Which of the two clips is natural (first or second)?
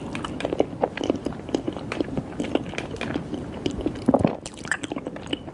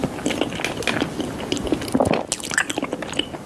second